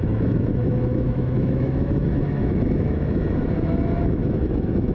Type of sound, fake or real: fake